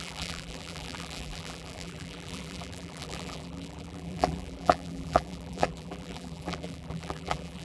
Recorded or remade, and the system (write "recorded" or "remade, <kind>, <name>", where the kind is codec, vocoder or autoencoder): remade, vocoder, BigVGAN v2